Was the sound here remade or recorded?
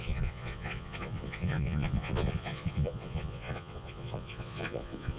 remade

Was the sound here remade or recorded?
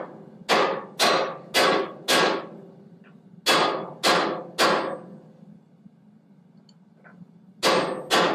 recorded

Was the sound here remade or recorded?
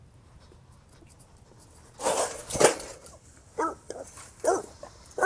recorded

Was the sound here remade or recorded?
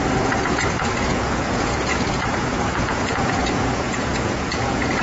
remade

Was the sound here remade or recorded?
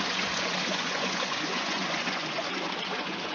remade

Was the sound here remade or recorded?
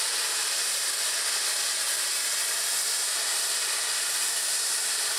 recorded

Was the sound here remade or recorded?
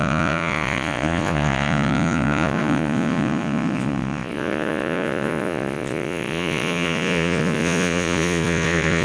remade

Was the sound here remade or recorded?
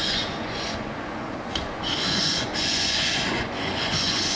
remade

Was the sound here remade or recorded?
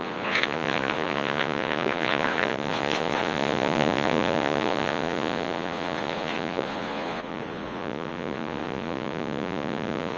remade